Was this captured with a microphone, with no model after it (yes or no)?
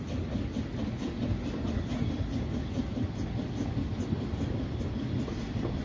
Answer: yes